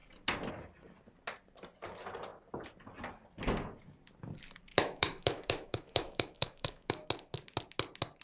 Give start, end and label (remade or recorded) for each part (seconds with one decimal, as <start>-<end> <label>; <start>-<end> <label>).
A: 0.0-4.7 recorded; 4.7-7.1 remade; 7.1-8.2 recorded